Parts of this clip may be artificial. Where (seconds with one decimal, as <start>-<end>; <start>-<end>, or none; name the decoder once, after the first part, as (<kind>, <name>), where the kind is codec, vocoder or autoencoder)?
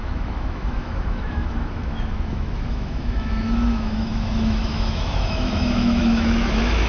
0.0-6.9 (autoencoder, DAC-VAE)